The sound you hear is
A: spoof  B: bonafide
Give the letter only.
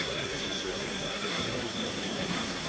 A